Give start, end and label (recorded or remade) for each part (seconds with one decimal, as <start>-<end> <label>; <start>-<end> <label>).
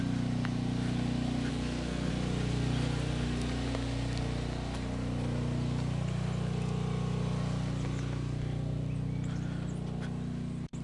0.0-1.5 recorded; 1.5-2.1 remade; 2.1-10.8 recorded